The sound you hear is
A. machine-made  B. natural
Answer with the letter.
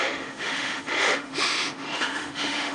A